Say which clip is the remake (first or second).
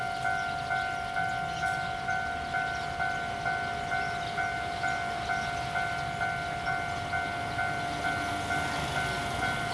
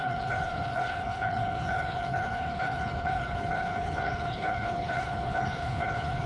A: second